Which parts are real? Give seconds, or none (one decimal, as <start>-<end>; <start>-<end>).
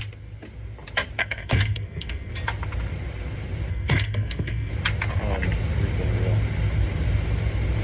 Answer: 0.0-1.2; 2.3-3.7; 4.7-7.8